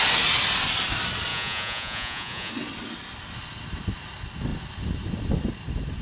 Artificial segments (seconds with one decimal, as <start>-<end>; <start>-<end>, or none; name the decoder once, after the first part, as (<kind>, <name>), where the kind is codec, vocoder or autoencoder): 1.3-2.5 (vocoder, Vocos)